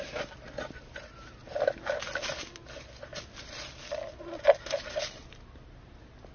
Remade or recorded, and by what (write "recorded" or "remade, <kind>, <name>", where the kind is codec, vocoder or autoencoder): recorded